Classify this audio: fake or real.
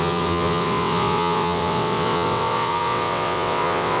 fake